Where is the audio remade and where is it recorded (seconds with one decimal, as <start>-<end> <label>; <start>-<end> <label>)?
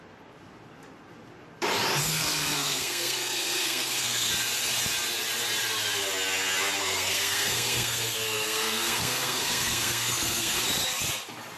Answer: 0.0-2.0 recorded; 2.0-4.3 remade; 4.3-6.8 recorded; 6.8-10.6 remade; 10.6-11.6 recorded